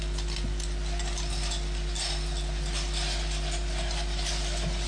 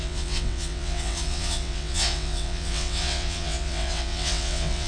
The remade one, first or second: second